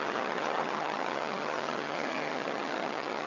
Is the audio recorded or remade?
remade